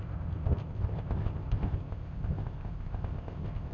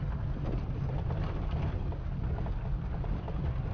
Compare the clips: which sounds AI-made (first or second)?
first